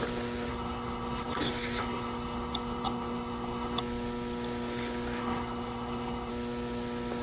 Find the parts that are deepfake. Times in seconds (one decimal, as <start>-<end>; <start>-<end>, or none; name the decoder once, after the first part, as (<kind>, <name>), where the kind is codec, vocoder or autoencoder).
0.5-1.4 (codec, HILCodec); 1.8-3.8; 5.2-6.3